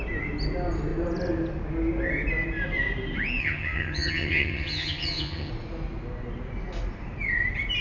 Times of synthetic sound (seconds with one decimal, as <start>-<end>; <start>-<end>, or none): 3.4-5.5